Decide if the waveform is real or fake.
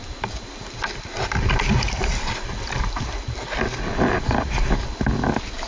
real